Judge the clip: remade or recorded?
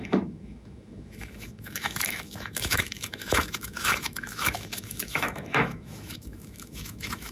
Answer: remade